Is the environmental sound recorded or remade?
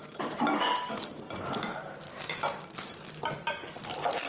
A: recorded